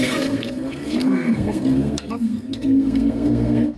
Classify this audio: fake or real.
fake